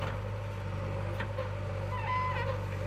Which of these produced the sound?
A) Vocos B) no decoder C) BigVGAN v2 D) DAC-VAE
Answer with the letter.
B